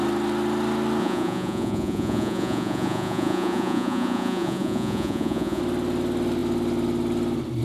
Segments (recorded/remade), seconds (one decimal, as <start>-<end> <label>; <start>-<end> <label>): 0.0-1.0 recorded; 1.0-5.6 remade; 5.6-7.6 recorded